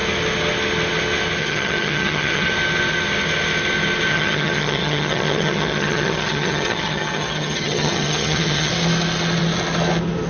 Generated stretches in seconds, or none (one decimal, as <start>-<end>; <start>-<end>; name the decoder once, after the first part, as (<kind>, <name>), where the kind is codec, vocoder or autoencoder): 1.4-2.5 (vocoder, HiFi-GAN); 4.1-8.7